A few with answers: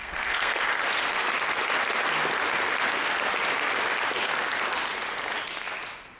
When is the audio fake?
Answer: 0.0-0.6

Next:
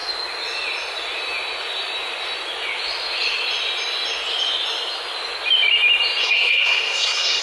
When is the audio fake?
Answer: 6.2-7.4

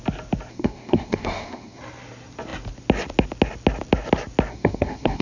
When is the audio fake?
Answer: 0.5-1.8; 4.5-5.2

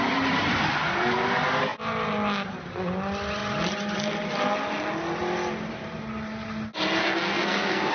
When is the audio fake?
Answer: 7.0-7.9

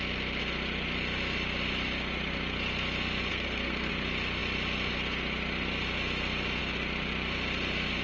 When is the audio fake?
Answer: 3.3-3.9

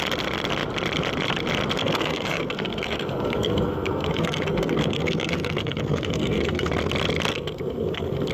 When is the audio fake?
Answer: 1.8-6.7; 7.3-8.3